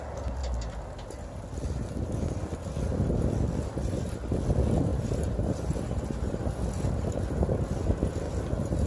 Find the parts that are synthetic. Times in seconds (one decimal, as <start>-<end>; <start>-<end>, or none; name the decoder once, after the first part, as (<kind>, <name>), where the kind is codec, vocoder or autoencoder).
4.9-6.3 (vocoder, BigVGAN v2)